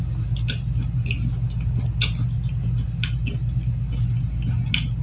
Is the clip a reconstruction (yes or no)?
no